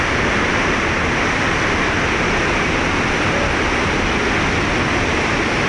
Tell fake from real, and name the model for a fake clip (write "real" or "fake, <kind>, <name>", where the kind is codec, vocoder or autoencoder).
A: real